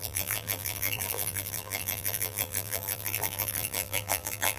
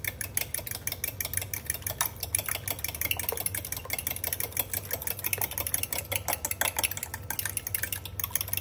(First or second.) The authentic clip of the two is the second